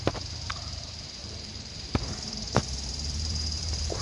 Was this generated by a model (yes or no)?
yes